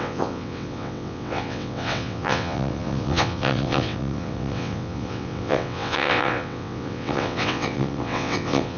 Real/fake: fake